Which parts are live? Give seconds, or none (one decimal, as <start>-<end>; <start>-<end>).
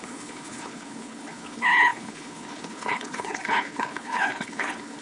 none